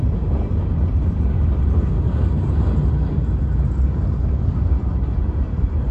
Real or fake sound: real